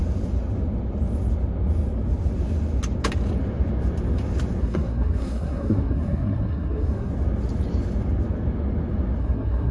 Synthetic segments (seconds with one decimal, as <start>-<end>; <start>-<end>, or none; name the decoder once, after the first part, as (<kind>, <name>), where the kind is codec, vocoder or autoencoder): 4.6-7.1 (codec, SNAC); 9.2-9.7

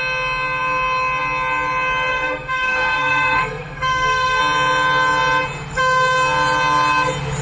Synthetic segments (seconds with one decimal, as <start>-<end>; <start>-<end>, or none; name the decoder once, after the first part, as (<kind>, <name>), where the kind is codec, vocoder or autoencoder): 2.1-4.4 (codec, SNAC)

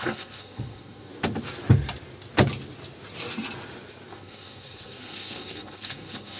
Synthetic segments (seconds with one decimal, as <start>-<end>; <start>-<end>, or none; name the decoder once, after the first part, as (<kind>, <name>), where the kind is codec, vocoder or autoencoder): 0.0-1.1 (codec, SNAC); 4.1-6.4

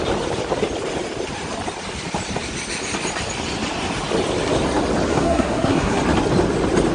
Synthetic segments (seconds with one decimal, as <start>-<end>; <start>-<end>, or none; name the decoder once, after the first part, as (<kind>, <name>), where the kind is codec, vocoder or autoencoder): 5.1-6.0 (codec, SNAC)

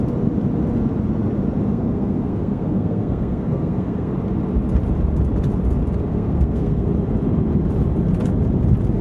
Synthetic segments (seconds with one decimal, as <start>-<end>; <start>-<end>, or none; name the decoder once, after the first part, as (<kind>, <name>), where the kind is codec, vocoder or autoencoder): 1.7-4.1 (codec, SNAC); 6.1-6.9

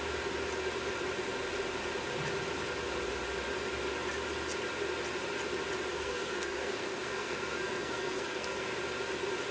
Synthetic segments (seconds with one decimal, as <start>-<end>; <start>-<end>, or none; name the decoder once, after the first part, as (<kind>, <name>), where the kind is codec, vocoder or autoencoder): 5.9-8.7 (codec, SNAC)

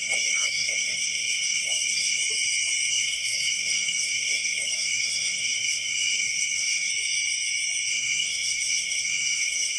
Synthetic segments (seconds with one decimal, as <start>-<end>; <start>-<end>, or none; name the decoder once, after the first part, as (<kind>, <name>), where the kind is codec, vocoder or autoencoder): 0.0-2.2 (codec, SNAC); 2.9-6.9; 7.9-9.8